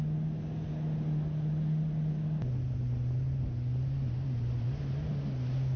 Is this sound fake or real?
real